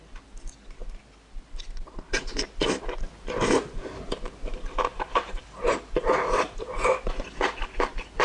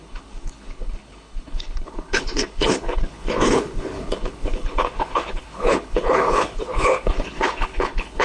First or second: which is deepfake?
second